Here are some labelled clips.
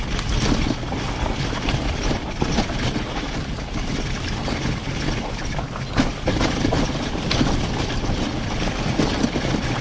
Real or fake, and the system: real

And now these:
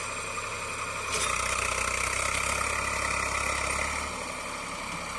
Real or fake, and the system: real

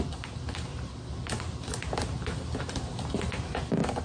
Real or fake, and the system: real